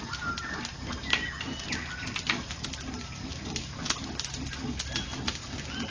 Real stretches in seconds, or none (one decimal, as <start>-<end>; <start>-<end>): 0.0-5.9